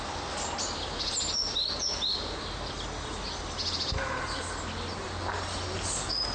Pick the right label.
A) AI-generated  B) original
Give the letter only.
B